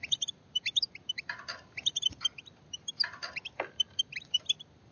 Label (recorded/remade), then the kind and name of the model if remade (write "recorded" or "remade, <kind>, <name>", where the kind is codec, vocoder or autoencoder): recorded